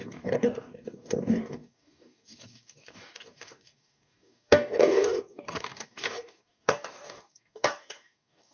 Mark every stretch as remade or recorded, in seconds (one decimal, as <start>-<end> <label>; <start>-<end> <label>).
0.0-8.5 remade